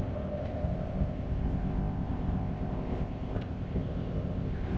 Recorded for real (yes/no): no